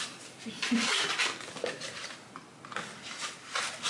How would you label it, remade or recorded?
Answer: recorded